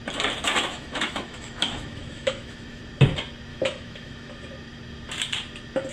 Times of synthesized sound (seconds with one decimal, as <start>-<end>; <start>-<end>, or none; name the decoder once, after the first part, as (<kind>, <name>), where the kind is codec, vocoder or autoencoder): 0.7-2.8 (autoencoder, DAC-VAE); 3.5-4.3